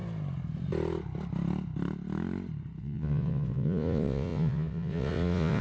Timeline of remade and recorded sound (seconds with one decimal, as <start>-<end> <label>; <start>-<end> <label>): 0.0-2.8 recorded; 2.8-5.6 remade